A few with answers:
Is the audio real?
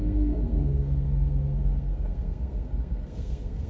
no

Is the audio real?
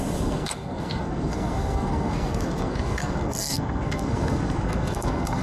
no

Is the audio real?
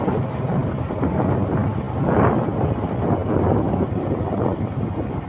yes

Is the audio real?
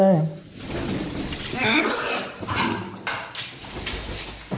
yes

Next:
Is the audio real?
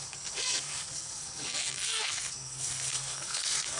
no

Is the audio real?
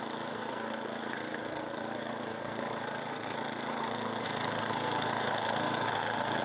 no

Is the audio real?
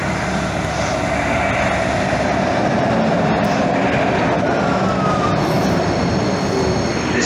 yes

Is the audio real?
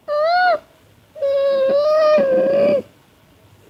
yes